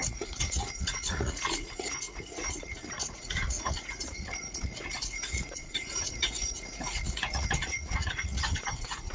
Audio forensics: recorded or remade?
remade